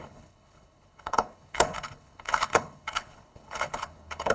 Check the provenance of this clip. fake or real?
fake